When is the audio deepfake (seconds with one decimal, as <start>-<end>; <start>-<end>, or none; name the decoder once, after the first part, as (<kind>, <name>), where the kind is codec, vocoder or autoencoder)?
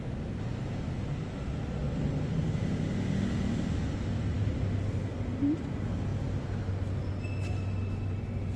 none